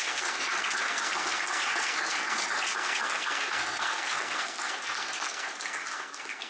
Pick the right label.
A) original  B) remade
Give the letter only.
B